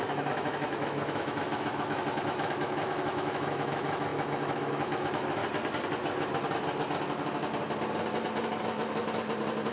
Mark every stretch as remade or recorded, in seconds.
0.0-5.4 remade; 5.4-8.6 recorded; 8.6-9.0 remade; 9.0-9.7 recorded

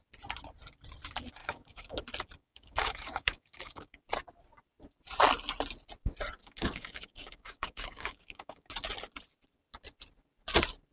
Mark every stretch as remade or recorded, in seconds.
0.0-1.4 recorded; 1.4-2.0 remade; 2.0-2.4 recorded; 2.4-4.0 remade; 4.0-6.4 recorded; 6.4-8.7 remade; 8.7-10.9 recorded

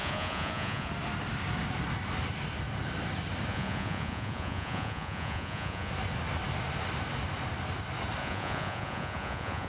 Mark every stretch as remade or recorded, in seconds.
0.0-0.9 remade; 0.9-3.5 recorded; 3.5-5.9 remade; 5.9-8.2 recorded; 8.2-9.7 remade

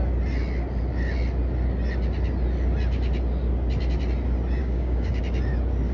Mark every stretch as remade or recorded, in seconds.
0.0-4.6 recorded; 4.6-5.2 remade; 5.2-5.9 recorded

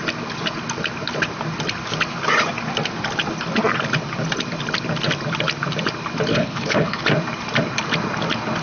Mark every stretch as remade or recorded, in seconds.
0.0-6.3 recorded; 6.3-7.0 remade; 7.0-8.6 recorded

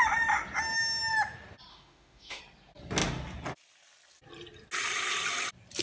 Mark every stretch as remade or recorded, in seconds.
0.0-1.7 recorded; 1.7-2.4 remade; 2.4-5.8 recorded

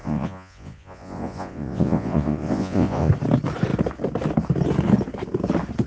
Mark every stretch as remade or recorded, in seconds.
0.0-3.1 remade; 3.1-5.9 recorded

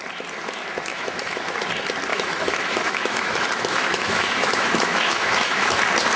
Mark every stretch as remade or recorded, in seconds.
0.0-0.9 recorded; 0.9-1.5 remade; 1.5-2.1 recorded; 2.1-5.8 remade; 5.8-6.2 recorded